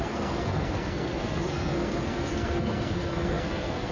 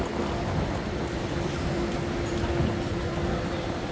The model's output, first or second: first